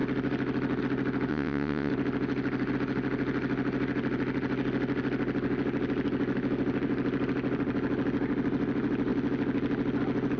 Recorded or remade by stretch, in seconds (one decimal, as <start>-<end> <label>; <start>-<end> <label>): 0.0-1.3 recorded; 1.3-1.9 remade; 1.9-10.4 recorded